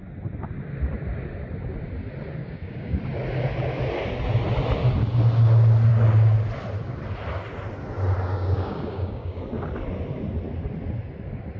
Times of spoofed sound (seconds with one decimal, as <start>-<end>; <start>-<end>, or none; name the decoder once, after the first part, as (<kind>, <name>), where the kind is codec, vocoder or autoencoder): 2.4-3.0 (codec, DAC); 8.3-9.4

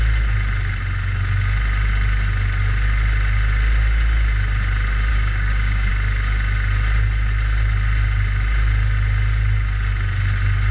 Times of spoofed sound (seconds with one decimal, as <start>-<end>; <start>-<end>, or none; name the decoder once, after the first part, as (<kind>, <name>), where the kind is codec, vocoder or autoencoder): 5.1-5.9 (codec, DAC)

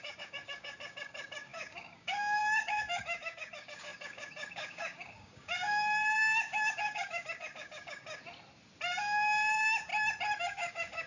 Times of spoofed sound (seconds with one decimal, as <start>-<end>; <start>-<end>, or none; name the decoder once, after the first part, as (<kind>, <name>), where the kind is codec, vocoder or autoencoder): 0.0-8.2 (codec, DAC); 9.0-9.9; 10.4-11.1

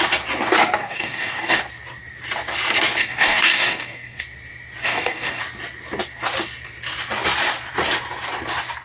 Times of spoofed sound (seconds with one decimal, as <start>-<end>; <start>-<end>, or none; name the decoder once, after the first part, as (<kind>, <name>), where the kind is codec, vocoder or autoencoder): 0.8-1.6 (codec, DAC); 3.0-4.2; 4.8-5.4